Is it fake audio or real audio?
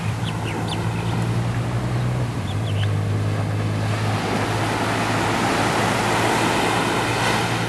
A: real